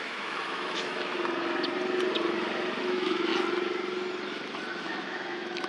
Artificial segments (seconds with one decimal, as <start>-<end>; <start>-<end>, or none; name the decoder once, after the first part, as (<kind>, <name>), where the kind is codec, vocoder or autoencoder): 0.0-1.1 (autoencoder, DAC-VAE); 2.8-3.3; 4.8-5.7